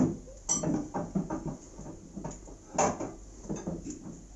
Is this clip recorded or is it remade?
recorded